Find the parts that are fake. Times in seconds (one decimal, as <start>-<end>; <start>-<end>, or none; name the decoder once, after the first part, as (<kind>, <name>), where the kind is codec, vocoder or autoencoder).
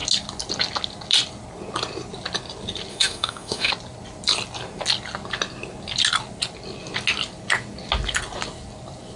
2.9-3.7 (autoencoder, DAC-VAE)